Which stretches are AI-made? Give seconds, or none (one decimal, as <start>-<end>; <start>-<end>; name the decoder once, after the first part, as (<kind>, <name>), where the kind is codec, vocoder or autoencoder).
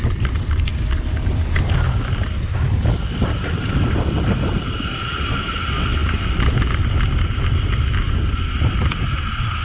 none